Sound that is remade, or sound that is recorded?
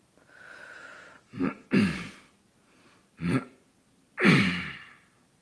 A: recorded